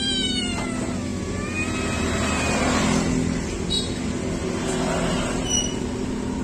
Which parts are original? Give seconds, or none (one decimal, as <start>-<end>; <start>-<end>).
0.0-6.4